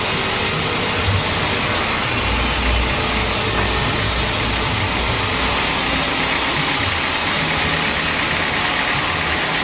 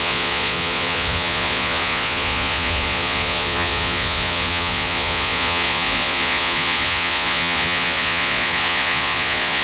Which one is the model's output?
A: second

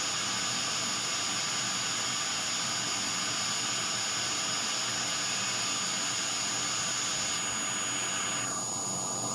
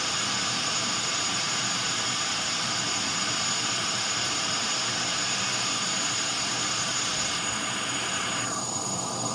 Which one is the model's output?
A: second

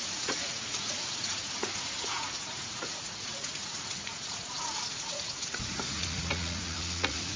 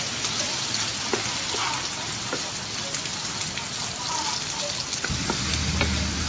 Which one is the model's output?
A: first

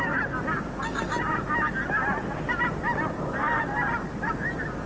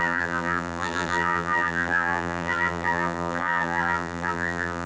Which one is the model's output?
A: second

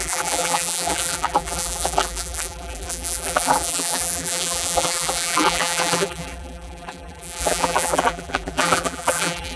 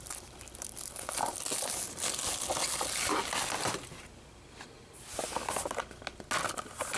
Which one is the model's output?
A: first